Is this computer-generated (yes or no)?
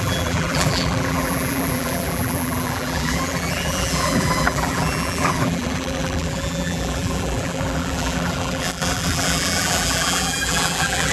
yes